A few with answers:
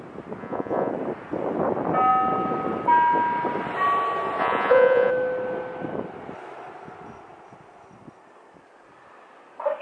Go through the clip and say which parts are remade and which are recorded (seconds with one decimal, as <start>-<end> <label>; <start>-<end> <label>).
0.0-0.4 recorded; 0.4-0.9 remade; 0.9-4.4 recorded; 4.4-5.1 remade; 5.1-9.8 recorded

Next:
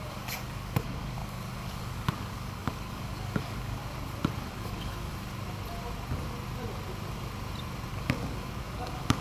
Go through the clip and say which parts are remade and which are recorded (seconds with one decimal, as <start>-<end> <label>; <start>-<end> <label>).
0.0-3.8 remade; 3.8-4.5 recorded; 4.5-5.1 remade; 5.1-7.9 recorded; 7.9-9.2 remade

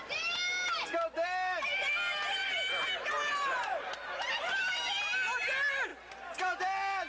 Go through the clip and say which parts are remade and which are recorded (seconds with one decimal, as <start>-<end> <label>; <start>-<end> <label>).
0.0-7.1 recorded

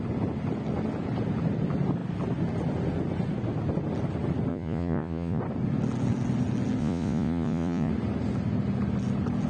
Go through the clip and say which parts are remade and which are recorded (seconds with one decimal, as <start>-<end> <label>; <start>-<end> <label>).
0.0-4.5 recorded; 4.5-5.4 remade; 5.4-6.8 recorded; 6.8-7.9 remade; 7.9-9.5 recorded